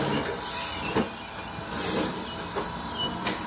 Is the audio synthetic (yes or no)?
no